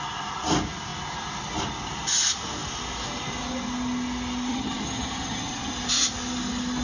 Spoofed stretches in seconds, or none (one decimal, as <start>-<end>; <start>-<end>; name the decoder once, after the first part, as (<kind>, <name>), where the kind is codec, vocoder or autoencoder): 4.5-5.7 (vocoder, HiFi-GAN)